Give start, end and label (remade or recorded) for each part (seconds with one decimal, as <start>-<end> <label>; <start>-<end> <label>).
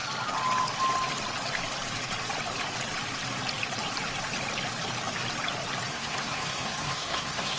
0.0-5.9 recorded; 5.9-7.6 remade